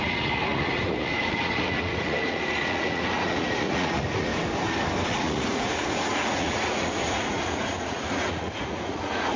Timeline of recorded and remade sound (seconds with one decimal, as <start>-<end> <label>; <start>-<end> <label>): 0.0-4.3 remade; 4.3-5.1 recorded; 5.1-9.4 remade